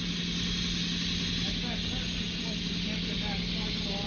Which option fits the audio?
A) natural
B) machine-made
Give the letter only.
A